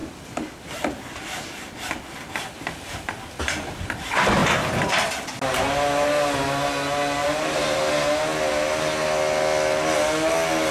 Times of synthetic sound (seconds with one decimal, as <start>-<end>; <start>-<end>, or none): 4.4-5.3; 7.2-7.8